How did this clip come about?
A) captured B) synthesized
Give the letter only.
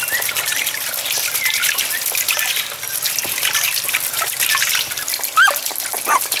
A